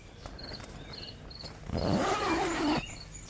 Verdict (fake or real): real